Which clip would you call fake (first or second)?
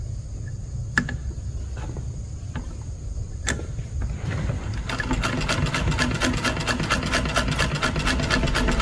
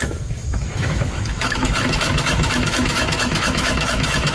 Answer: second